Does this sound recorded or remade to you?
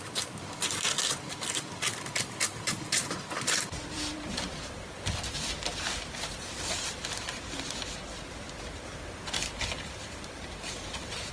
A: remade